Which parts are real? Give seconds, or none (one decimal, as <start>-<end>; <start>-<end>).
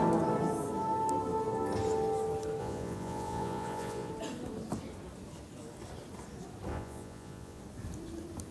0.0-2.6; 4.1-6.7; 7.6-8.5